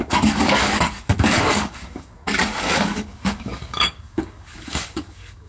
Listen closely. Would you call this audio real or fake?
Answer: fake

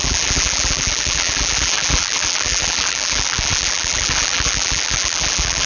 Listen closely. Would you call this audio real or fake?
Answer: fake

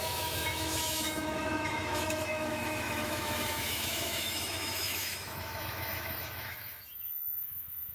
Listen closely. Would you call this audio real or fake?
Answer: fake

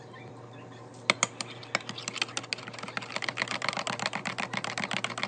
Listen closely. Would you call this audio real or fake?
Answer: real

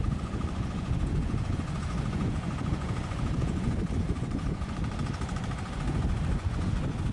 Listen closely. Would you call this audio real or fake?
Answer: fake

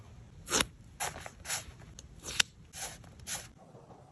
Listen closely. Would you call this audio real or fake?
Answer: real